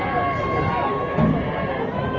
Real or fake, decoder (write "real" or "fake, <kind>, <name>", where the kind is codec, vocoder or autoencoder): real